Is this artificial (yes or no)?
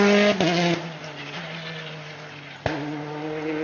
no